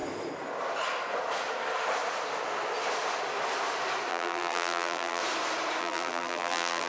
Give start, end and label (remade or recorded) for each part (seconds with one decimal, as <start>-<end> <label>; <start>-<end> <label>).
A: 0.0-4.1 recorded; 4.1-5.2 remade; 5.2-5.8 recorded; 5.8-6.9 remade